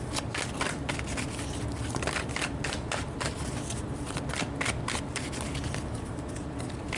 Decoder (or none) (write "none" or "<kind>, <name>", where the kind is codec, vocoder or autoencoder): none